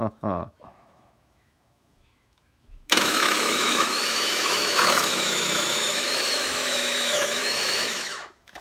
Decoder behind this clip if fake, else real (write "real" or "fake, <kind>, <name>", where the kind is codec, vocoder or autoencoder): fake, autoencoder, DAC-VAE